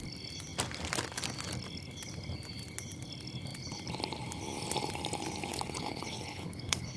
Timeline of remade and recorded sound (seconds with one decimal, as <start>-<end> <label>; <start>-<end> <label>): 0.0-5.5 recorded; 5.5-7.0 remade